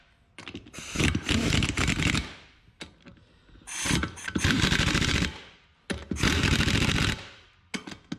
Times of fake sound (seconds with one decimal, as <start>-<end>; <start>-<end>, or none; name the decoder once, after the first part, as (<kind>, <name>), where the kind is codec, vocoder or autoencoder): none